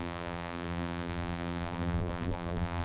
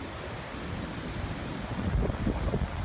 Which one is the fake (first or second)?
first